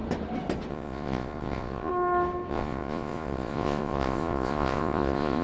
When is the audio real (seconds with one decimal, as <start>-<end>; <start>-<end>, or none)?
0.0-0.7; 1.9-2.5